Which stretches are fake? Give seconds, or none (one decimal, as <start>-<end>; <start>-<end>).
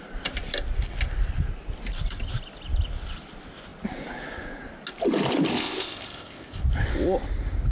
5.5-6.6